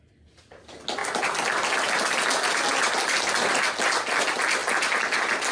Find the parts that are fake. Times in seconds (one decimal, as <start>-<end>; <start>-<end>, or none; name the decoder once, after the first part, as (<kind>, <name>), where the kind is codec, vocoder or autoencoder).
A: none